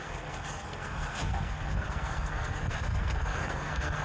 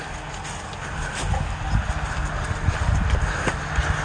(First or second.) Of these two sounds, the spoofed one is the first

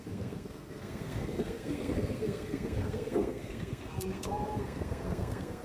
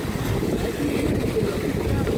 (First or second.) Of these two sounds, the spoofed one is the first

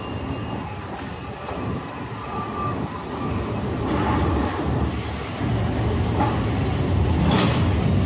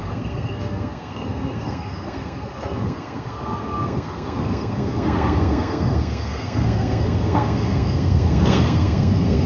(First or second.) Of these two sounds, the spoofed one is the second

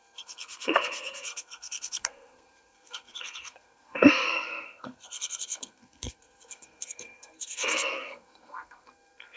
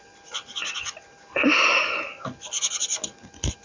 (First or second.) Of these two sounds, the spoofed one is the first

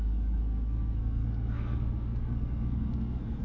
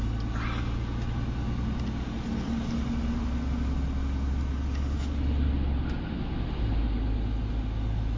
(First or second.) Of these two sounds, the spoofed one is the first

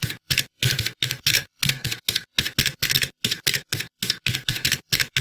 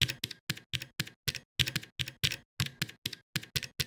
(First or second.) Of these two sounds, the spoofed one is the first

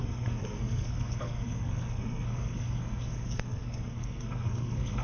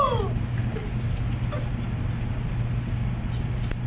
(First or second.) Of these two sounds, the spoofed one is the first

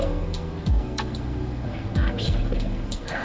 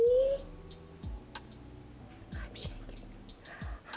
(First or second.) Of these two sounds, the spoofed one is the first